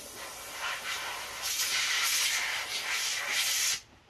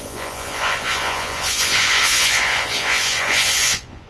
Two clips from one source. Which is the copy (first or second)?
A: second